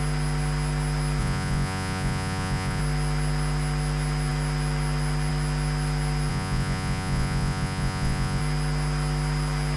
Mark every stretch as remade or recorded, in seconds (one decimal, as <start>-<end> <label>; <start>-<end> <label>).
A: 0.0-1.2 recorded; 1.2-2.8 remade; 2.8-6.3 recorded; 6.3-8.4 remade; 8.4-9.8 recorded